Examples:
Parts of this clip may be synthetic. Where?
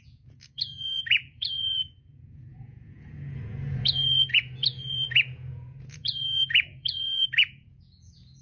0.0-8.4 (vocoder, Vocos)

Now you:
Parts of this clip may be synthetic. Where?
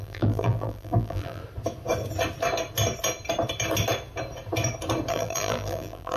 0.0-1.4 (vocoder, BigVGAN v2); 5.1-6.2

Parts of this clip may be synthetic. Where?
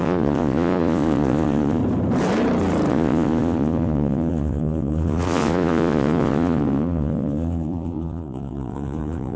0.0-1.8 (vocoder, Vocos); 2.9-9.4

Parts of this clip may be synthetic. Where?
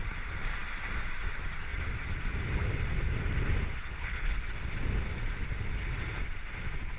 3.8-4.3 (codec, HILCodec)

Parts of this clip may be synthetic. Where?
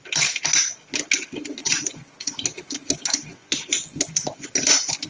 1.6-2.4 (vocoder, Vocos); 3.3-4.5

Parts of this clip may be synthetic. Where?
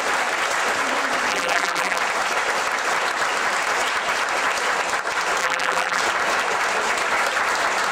1.3-2.0 (vocoder, BigVGAN v2); 5.4-6.0